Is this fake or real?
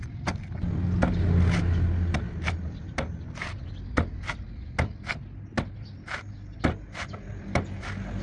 real